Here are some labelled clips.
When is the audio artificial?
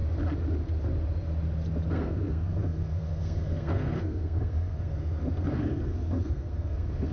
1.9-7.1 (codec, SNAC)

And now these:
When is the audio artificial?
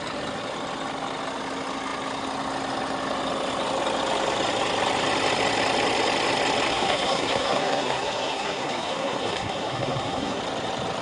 6.7-10.4 (codec, SNAC)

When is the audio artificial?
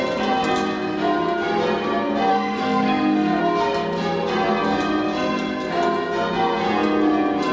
2.3-3.4 (codec, SNAC)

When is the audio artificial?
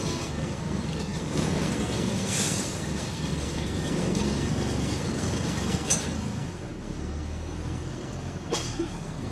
0.0-9.3 (codec, SNAC)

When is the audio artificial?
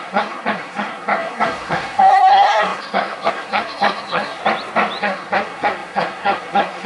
0.0-4.4 (codec, SNAC); 5.0-6.9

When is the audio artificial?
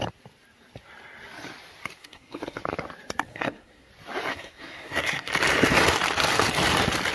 2.0-2.6 (codec, SNAC); 3.3-3.9; 4.3-5.3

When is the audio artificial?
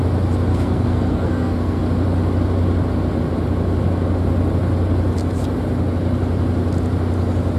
0.5-1.8 (codec, SNAC)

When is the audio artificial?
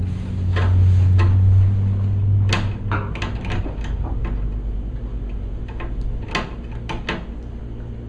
none